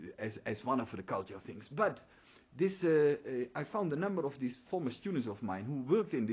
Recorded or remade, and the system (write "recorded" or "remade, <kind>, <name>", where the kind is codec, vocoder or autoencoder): recorded